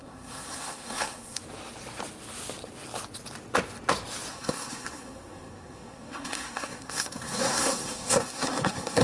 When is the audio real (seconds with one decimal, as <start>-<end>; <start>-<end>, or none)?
1.4-4.3